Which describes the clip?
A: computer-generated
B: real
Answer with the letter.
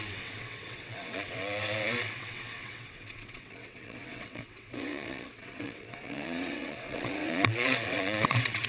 A